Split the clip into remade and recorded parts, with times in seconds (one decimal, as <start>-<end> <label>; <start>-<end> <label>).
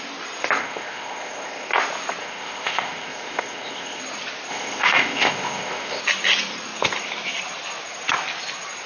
0.0-0.6 recorded; 0.6-1.7 remade; 1.7-2.2 recorded; 2.2-4.0 remade; 4.0-4.5 recorded; 4.5-6.0 remade; 6.0-8.9 recorded